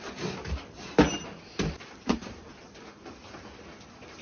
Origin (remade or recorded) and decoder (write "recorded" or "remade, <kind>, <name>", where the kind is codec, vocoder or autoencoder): recorded